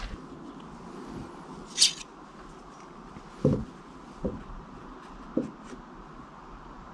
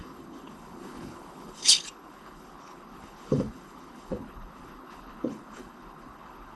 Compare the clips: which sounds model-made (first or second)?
second